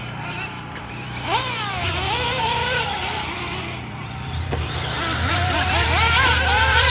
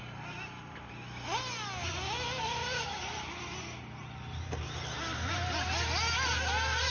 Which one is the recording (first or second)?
second